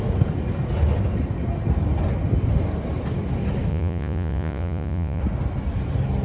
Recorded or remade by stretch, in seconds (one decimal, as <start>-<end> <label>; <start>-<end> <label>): 0.0-3.7 recorded; 3.7-5.2 remade; 5.2-6.2 recorded